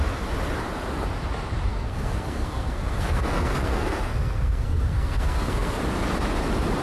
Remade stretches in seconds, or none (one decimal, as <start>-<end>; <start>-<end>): 1.7-5.8